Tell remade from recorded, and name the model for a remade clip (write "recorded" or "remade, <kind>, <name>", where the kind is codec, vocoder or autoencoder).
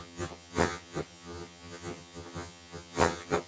remade, vocoder, HiFi-GAN